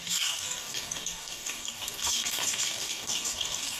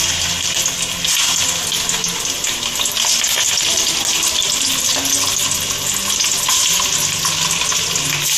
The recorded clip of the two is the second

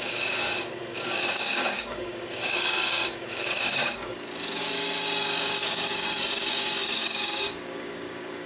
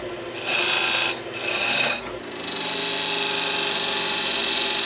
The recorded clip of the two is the second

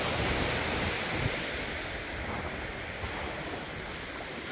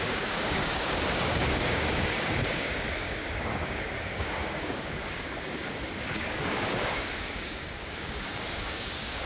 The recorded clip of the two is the first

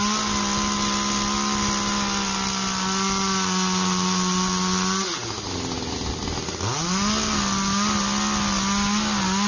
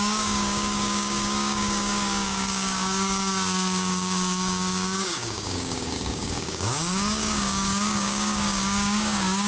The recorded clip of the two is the first